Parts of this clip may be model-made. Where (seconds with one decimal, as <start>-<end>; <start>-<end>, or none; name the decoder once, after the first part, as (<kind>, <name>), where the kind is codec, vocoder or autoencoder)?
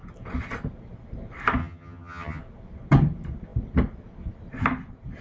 1.6-2.4 (vocoder, HiFi-GAN)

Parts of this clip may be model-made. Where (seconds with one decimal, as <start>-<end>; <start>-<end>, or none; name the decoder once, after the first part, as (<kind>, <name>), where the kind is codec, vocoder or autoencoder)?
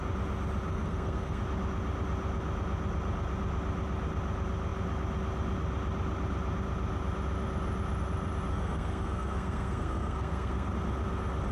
0.7-1.4 (codec, SNAC); 8.5-10.7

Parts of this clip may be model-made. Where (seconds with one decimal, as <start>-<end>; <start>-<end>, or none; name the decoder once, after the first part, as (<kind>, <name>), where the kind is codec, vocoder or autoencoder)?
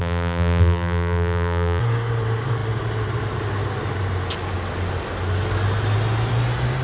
0.0-1.8 (vocoder, BigVGAN v2)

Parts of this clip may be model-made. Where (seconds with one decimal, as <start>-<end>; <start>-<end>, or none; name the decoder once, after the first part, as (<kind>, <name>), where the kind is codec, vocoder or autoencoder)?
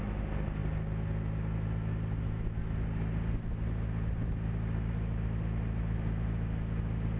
none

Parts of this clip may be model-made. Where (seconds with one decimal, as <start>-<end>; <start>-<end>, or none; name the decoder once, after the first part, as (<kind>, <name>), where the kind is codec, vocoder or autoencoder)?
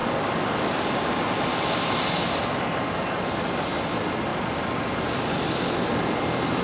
none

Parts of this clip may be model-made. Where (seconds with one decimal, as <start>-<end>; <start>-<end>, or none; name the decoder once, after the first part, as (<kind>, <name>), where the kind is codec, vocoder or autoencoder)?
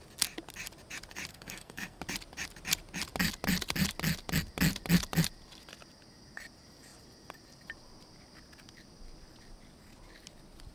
1.3-2.0 (codec, SNAC)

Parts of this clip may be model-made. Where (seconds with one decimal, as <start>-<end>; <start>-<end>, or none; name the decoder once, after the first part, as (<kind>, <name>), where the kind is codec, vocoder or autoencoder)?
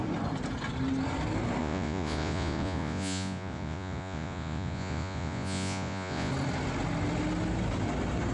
1.6-6.3 (vocoder, Vocos)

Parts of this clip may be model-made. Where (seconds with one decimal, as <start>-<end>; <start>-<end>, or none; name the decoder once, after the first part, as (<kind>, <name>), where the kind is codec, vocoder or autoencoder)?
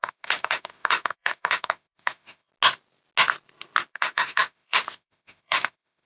0.0-2.5 (autoencoder, DAC-VAE); 3.9-6.1